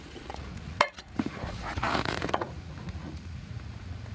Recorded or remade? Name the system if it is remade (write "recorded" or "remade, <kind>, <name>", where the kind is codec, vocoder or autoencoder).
remade, vocoder, Vocos